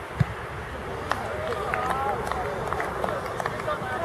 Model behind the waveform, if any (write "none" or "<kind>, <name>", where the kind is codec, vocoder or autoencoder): none